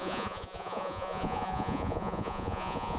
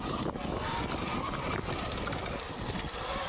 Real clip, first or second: second